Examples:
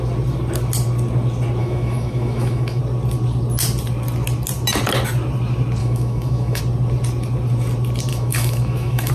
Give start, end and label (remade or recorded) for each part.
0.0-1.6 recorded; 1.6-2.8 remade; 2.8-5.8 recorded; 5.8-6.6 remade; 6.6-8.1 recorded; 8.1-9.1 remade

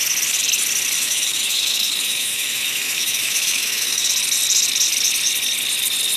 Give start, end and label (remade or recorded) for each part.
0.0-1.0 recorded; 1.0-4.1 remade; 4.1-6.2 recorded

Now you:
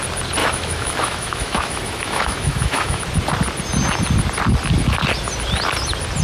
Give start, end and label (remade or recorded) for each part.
0.0-0.4 recorded; 0.4-3.0 remade; 3.0-6.2 recorded

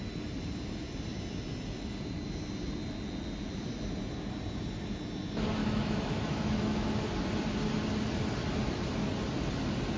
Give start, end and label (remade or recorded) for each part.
0.0-5.6 recorded; 5.6-7.0 remade; 7.0-10.0 recorded

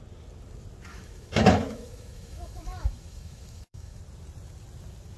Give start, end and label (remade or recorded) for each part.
0.0-0.9 recorded; 0.9-4.0 remade; 4.0-5.2 recorded